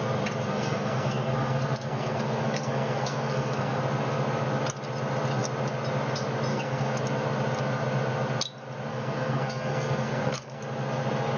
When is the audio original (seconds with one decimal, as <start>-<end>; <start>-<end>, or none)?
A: 0.0-0.5; 3.8-6.5; 7.0-8.9; 10.6-11.4